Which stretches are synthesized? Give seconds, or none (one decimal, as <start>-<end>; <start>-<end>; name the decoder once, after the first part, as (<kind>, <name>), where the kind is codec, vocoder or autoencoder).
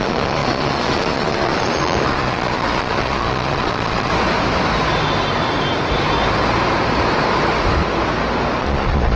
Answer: 0.0-4.1 (vocoder, Vocos); 8.6-9.2